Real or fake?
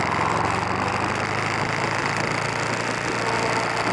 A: real